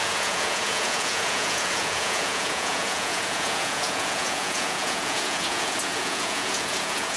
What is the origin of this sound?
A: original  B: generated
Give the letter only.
B